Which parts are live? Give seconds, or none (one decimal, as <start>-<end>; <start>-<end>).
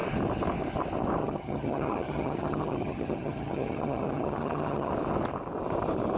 0.0-1.2; 4.9-6.2